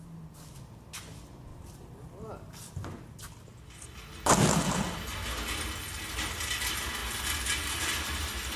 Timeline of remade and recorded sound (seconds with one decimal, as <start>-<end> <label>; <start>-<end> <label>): 0.0-8.6 recorded